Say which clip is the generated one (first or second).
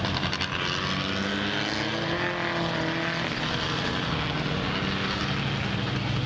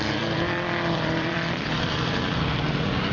second